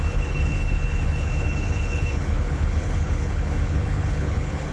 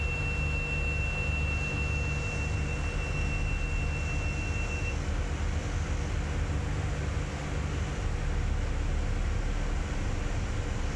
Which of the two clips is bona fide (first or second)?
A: second